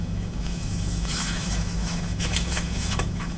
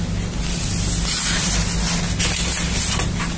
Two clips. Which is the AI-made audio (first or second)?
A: first